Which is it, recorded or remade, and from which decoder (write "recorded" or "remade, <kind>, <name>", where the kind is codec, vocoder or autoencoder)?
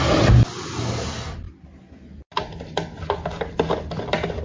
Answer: recorded